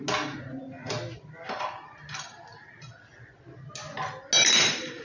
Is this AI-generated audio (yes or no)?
no